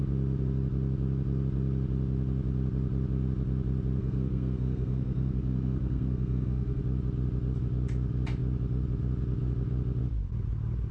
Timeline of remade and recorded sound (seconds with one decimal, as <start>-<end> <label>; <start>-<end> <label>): 0.0-4.0 recorded; 4.0-6.8 remade; 6.8-10.9 recorded